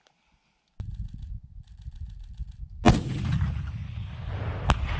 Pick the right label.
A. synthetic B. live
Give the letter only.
B